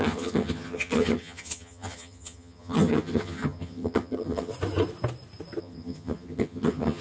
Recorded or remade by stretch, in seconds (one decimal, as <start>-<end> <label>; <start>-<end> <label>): 0.0-4.5 remade; 4.5-5.6 recorded; 5.6-7.0 remade